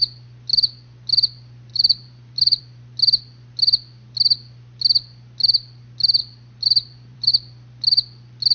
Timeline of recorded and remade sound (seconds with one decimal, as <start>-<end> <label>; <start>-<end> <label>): 0.0-1.7 recorded; 1.7-2.6 remade; 2.6-6.2 recorded; 6.2-7.3 remade; 7.3-8.5 recorded